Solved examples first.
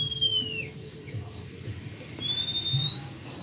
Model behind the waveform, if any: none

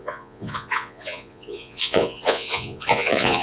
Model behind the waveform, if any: vocoder, Vocos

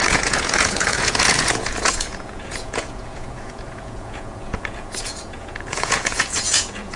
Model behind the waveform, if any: vocoder, Vocos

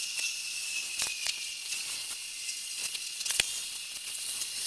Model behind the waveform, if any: vocoder, Vocos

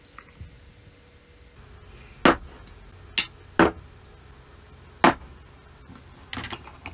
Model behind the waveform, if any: none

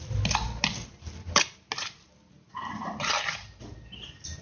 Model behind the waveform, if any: none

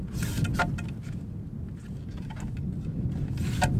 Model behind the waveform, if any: none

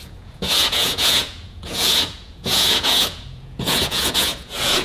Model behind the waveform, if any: vocoder, Vocos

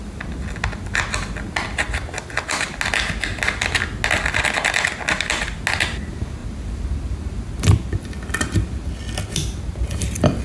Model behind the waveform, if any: none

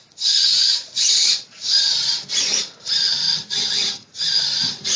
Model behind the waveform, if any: vocoder, Vocos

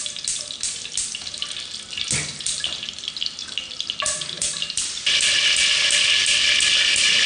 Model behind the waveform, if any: none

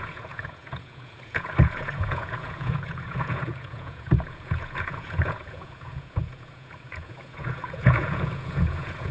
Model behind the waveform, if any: vocoder, Vocos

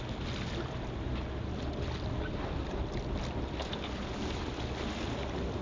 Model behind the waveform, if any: none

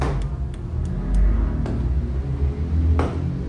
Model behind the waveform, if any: none